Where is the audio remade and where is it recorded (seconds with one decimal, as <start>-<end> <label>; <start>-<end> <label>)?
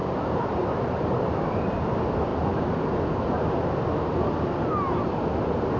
0.0-1.7 remade; 1.7-2.3 recorded; 2.3-3.0 remade; 3.0-5.8 recorded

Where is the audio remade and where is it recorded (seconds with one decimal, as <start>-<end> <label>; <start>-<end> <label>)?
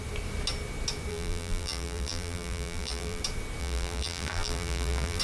0.0-1.1 recorded; 1.1-3.2 remade; 3.2-3.6 recorded; 3.6-5.2 remade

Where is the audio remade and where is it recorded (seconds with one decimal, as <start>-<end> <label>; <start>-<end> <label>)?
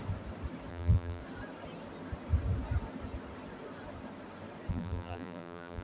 0.0-0.7 recorded; 0.7-1.2 remade; 1.2-4.7 recorded; 4.7-5.8 remade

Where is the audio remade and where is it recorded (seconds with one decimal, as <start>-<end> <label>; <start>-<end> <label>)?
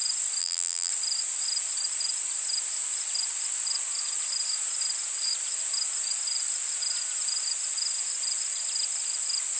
0.0-0.4 recorded; 0.4-0.9 remade; 0.9-9.6 recorded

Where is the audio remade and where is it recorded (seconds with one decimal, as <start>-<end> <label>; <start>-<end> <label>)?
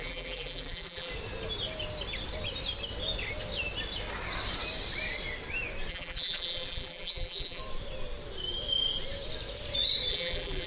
0.0-1.1 remade; 1.1-5.9 recorded; 5.9-7.6 remade; 7.6-10.1 recorded; 10.1-10.7 remade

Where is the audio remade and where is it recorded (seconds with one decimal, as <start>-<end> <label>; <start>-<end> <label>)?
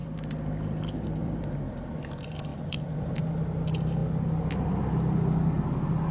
0.0-1.6 remade; 1.6-2.5 recorded; 2.5-3.2 remade; 3.2-6.1 recorded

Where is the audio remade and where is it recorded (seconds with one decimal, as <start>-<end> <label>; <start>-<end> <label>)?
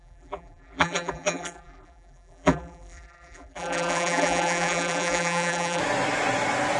0.0-5.8 remade; 5.8-6.8 recorded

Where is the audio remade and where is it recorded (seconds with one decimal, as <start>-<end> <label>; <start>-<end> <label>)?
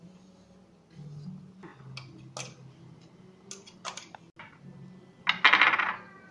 0.0-6.3 recorded